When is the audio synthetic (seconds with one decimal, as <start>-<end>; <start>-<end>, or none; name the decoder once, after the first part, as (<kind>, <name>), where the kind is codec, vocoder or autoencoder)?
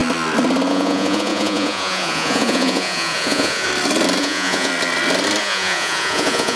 0.7-3.7 (vocoder, Vocos); 4.2-4.7; 5.4-6.6